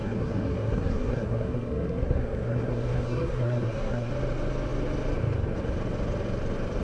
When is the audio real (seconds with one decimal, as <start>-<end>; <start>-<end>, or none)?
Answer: 4.1-6.8